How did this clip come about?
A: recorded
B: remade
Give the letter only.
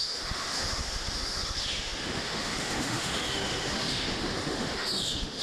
B